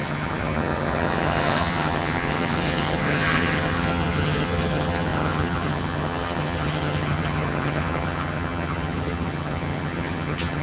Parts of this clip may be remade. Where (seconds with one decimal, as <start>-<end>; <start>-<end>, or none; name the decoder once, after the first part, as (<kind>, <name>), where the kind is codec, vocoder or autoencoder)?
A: 0.0-10.6 (vocoder, HiFi-GAN)